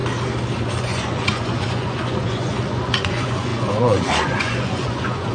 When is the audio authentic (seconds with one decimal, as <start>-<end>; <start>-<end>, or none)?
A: 0.0-0.8